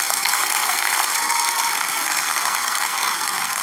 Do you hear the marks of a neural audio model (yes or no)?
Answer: yes